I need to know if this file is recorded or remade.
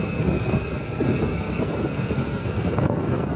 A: remade